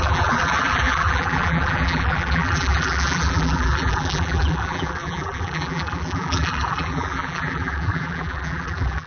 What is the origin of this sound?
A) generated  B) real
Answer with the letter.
A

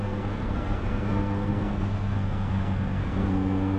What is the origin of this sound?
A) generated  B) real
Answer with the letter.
A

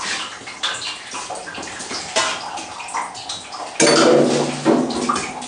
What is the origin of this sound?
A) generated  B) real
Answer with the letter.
B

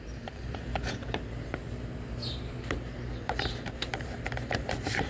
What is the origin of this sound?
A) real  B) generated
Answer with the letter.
B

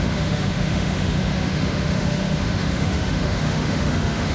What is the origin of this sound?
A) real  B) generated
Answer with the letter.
B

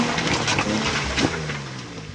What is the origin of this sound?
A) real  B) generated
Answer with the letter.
A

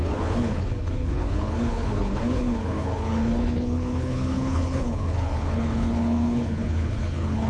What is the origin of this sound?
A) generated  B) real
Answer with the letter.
A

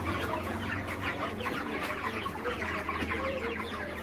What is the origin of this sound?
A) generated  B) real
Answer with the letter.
A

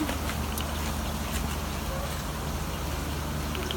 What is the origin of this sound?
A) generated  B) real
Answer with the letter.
B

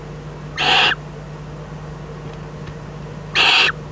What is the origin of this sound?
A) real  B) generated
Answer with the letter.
A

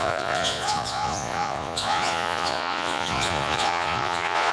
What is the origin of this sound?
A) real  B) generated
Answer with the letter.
B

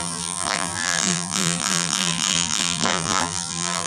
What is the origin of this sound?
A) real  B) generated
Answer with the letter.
B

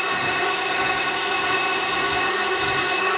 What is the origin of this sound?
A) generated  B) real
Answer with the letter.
A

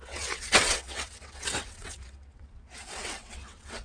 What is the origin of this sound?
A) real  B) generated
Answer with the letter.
B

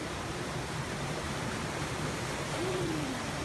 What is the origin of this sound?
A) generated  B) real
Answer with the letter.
A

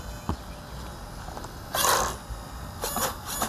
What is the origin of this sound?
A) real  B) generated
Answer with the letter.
A